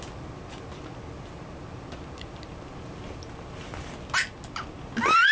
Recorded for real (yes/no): yes